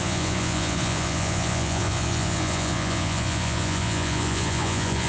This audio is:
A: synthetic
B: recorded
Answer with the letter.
A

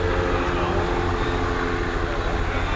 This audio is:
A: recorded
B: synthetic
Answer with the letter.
A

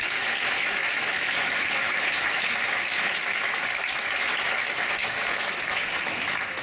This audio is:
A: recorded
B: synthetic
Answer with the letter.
B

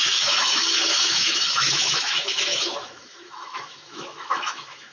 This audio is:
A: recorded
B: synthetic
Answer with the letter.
B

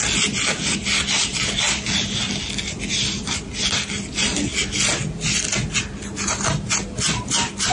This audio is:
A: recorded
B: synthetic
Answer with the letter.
A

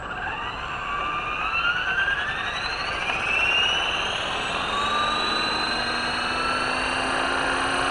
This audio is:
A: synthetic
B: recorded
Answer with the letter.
B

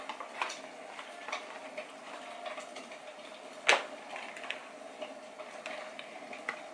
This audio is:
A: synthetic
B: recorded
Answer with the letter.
B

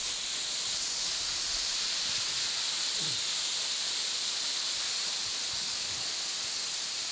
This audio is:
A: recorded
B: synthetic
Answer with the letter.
A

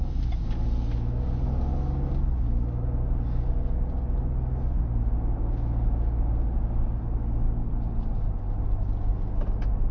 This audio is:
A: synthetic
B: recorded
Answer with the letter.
B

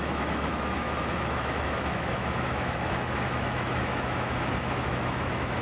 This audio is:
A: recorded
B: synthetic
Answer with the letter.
B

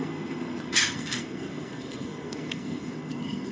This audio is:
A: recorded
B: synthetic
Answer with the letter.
B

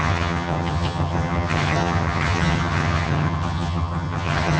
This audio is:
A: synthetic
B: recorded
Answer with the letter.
A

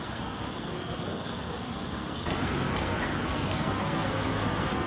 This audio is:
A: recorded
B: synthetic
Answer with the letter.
B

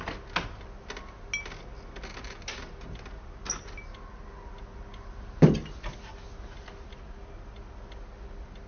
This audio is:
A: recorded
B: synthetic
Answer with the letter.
A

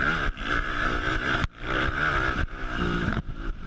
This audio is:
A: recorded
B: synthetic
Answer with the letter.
B